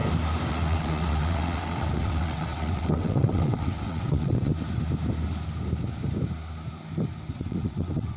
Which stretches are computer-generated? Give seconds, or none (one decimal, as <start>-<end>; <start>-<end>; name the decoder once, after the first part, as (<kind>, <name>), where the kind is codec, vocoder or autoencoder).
0.5-4.5 (vocoder, WaveNeXt); 7.3-8.2